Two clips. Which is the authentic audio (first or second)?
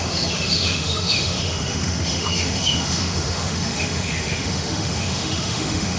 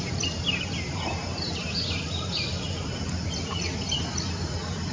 second